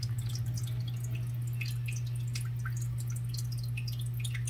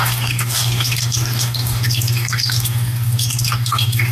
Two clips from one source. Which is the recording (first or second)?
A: first